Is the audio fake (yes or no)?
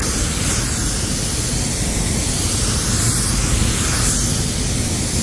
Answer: no